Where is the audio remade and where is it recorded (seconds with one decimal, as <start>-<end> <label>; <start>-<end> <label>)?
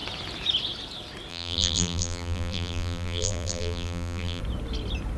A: 0.0-1.3 recorded; 1.3-4.4 remade; 4.4-5.2 recorded